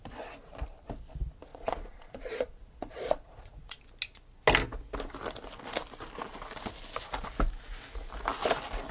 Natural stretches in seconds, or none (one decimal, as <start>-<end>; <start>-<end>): 0.0-1.5; 3.8-8.9